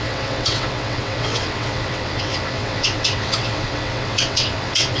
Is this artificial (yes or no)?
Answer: yes